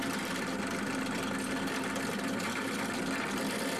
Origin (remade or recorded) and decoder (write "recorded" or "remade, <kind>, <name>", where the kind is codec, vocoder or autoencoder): recorded